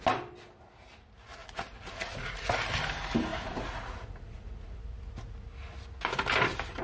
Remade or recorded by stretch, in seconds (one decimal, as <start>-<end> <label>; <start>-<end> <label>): 0.0-1.4 recorded; 1.4-2.5 remade; 2.5-3.3 recorded; 3.3-5.0 remade; 5.0-6.8 recorded